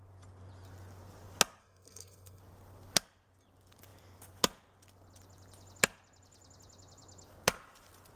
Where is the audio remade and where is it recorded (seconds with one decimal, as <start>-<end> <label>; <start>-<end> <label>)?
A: 0.0-1.6 recorded; 1.6-2.4 remade; 2.4-8.2 recorded